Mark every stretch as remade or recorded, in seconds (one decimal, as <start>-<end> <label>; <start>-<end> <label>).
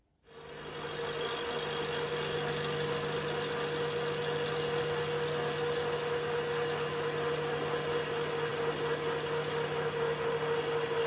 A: 0.0-11.1 recorded